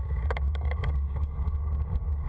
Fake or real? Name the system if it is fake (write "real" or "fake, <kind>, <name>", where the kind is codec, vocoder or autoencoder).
fake, codec, DAC